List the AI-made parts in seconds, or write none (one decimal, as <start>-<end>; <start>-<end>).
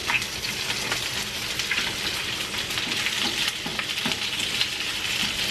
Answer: none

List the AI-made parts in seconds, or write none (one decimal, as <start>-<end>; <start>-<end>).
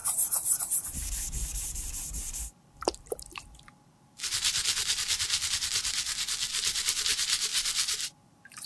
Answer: 0.0-0.6; 1.4-5.5; 7.5-8.7